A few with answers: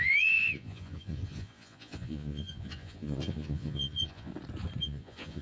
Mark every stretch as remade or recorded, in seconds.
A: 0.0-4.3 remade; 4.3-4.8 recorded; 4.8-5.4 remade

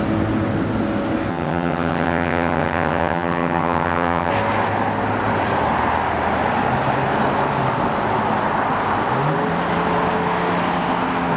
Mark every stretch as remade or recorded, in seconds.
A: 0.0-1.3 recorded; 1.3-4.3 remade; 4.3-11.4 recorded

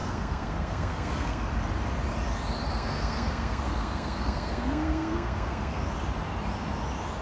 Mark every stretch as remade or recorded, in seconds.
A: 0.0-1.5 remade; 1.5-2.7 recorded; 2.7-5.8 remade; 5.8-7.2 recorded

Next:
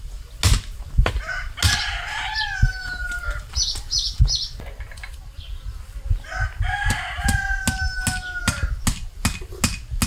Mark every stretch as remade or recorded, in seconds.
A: 0.0-2.8 recorded; 2.8-4.2 remade; 4.2-10.1 recorded

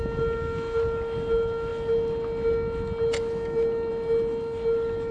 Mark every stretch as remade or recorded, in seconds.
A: 0.0-5.1 recorded

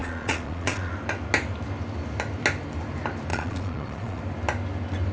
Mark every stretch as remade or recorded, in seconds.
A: 0.0-0.9 remade; 0.9-3.3 recorded; 3.3-4.2 remade; 4.2-5.1 recorded

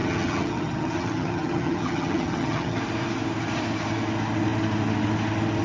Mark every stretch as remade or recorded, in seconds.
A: 0.0-2.8 remade; 2.8-5.6 recorded